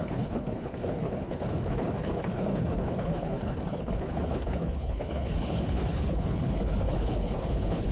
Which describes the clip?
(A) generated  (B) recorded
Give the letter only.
A